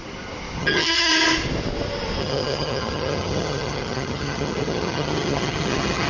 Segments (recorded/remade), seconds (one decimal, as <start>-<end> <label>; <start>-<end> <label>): 0.0-0.6 recorded; 0.6-1.1 remade; 1.1-2.2 recorded; 2.2-6.1 remade